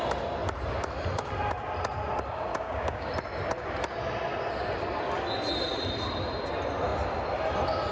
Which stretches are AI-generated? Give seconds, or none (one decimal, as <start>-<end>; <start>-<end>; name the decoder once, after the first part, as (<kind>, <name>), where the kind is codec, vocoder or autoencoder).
2.5-3.1 (codec, DAC)